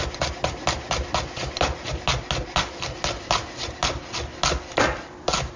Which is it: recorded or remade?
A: recorded